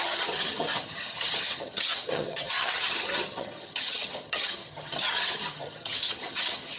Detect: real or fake fake